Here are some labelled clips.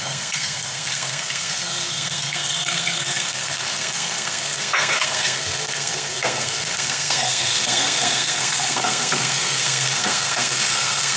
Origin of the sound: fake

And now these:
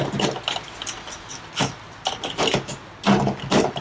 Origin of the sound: real